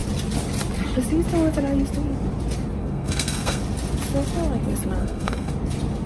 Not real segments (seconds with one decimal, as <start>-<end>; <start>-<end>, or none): 2.8-3.6; 5.0-5.5